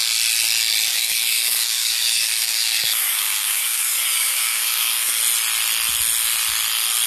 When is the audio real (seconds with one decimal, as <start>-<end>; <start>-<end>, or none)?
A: 0.0-0.9; 5.2-7.1